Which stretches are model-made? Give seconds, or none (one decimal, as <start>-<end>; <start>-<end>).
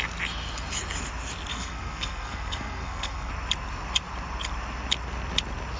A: 1.5-3.3